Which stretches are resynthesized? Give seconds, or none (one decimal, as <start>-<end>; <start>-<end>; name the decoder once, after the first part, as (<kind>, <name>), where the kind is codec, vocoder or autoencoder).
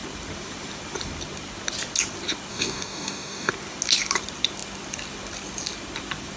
2.5-3.5 (codec, DAC)